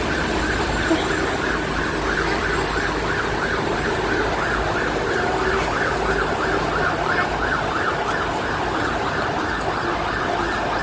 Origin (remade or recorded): recorded